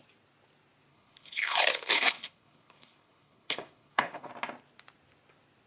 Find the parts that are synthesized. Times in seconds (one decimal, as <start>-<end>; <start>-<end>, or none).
0.9-4.3